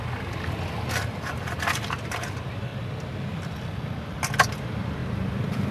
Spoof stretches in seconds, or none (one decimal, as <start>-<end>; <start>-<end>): 0.0-2.7; 3.3-5.7